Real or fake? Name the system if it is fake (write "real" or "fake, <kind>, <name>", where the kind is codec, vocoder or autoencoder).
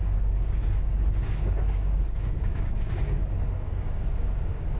fake, codec, DAC